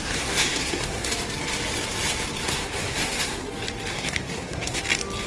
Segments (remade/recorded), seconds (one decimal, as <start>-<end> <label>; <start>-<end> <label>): 0.0-1.1 remade; 1.1-2.4 recorded; 2.4-3.5 remade; 3.5-3.9 recorded; 3.9-4.8 remade; 4.8-5.3 recorded